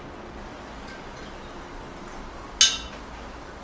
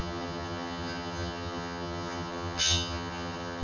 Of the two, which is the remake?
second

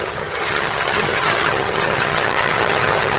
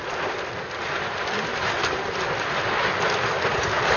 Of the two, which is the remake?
first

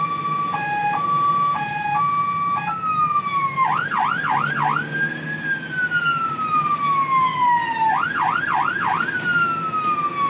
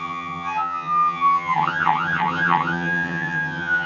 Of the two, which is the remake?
second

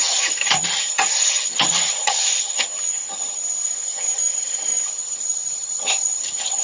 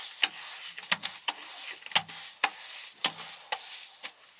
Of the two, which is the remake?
first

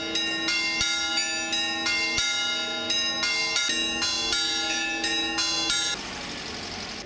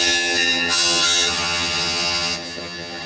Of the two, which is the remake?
second